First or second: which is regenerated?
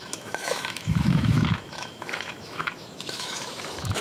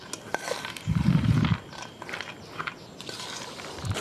first